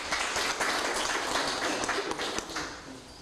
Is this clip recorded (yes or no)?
yes